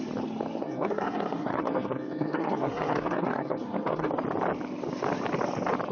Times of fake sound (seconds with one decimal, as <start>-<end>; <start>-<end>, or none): 0.6-4.1